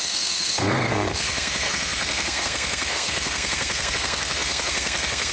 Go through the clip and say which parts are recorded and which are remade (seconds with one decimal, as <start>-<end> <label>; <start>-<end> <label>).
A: 0.0-5.3 remade